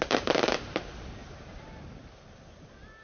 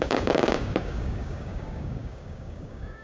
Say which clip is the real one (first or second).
first